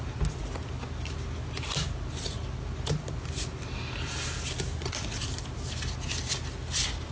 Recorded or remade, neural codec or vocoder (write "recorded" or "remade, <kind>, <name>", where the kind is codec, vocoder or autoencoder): recorded